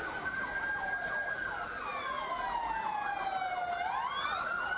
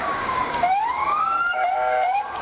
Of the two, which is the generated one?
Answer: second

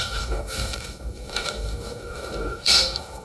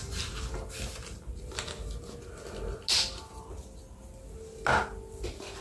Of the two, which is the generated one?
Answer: first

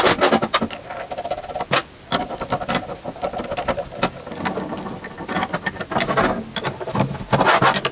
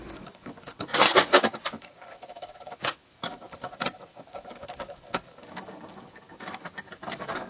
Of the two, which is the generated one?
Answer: second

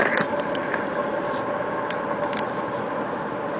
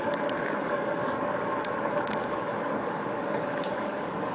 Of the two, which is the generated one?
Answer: second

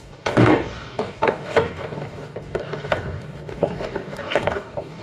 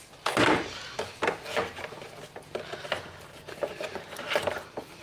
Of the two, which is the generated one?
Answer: first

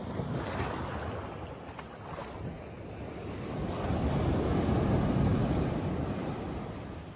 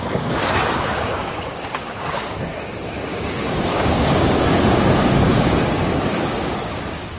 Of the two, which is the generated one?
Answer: second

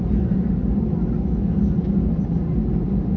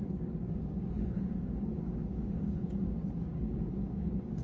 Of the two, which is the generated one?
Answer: second